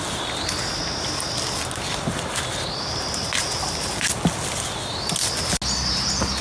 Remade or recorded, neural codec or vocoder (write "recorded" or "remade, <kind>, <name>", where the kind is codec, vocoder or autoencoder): recorded